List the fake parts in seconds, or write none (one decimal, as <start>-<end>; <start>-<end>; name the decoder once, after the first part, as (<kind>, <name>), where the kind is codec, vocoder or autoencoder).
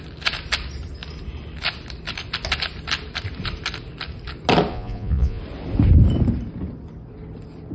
4.7-5.4 (vocoder, Vocos)